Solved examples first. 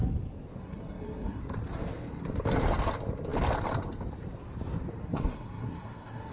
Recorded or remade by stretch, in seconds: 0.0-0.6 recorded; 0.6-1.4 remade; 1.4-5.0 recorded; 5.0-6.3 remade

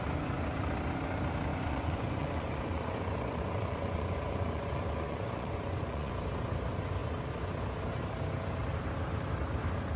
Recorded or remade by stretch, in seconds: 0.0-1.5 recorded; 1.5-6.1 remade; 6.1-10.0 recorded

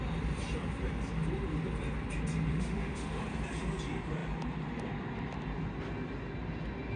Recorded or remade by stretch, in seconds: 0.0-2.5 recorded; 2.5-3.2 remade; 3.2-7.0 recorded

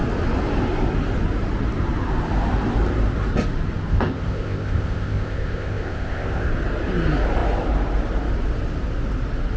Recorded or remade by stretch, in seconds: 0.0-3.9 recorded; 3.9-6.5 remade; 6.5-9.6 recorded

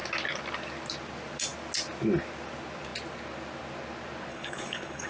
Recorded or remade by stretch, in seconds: 0.0-4.3 recorded; 4.3-5.1 remade

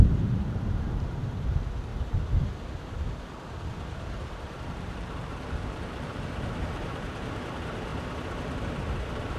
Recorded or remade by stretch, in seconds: 0.0-1.9 remade; 1.9-4.7 recorded; 4.7-7.9 remade; 7.9-8.7 recorded; 8.7-9.4 remade

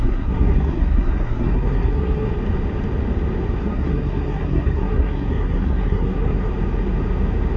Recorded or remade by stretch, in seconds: 0.0-2.3 remade; 2.3-3.6 recorded; 3.6-6.5 remade; 6.5-7.6 recorded

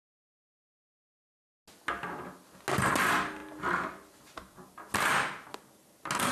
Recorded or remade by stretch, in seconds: 0.0-6.3 recorded